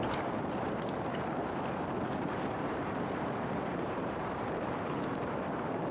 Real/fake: fake